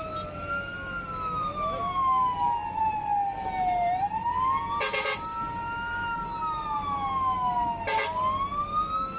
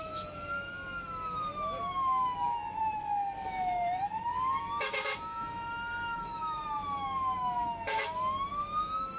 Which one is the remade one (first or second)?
second